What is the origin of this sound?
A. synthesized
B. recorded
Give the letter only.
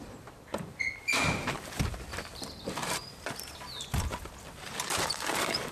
A